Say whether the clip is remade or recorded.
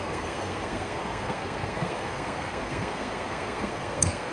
remade